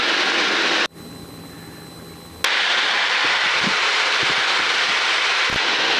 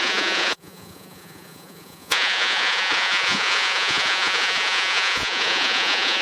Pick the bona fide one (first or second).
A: first